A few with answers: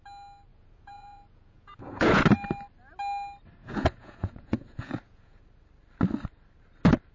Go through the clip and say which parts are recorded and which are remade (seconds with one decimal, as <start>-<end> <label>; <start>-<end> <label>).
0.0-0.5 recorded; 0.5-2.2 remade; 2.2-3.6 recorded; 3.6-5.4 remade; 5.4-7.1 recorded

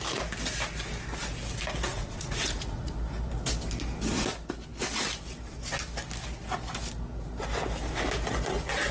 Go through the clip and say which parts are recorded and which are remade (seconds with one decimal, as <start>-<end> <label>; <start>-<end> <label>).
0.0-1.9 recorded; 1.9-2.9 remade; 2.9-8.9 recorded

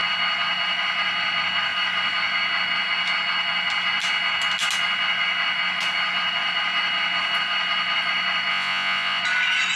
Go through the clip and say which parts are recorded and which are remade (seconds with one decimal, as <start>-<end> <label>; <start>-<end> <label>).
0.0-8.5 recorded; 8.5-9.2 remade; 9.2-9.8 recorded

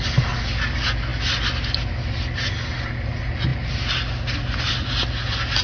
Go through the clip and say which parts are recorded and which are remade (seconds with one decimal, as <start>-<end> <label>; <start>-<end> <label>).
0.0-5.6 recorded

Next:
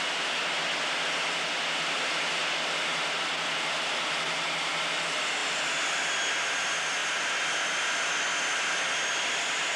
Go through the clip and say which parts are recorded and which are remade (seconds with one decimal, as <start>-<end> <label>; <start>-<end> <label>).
0.0-9.8 recorded